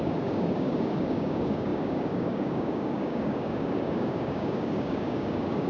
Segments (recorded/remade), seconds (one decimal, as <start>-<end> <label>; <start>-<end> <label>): 0.0-5.7 remade